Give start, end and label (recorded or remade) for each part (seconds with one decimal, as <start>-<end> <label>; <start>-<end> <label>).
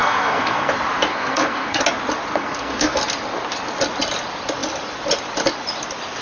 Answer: 0.0-0.7 remade; 0.7-1.1 recorded; 1.1-1.8 remade; 1.8-2.3 recorded; 2.3-3.0 remade; 3.0-6.2 recorded